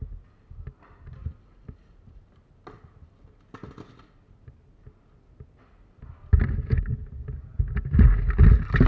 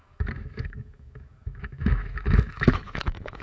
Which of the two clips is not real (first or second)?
second